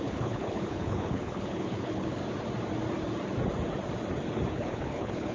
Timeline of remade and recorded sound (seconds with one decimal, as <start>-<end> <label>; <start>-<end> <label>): 0.0-2.2 remade; 2.2-4.5 recorded; 4.5-5.3 remade